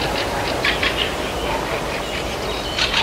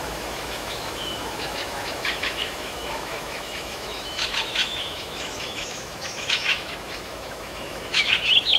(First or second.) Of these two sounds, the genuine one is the first